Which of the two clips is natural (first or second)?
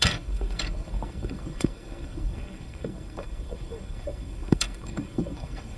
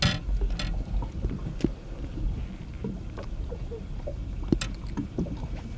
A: second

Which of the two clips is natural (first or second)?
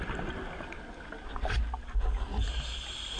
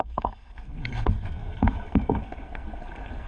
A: first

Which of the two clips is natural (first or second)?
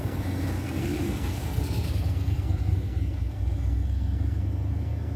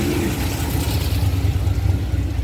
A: second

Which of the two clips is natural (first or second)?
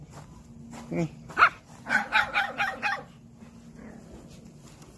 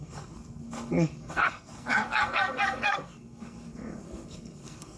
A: first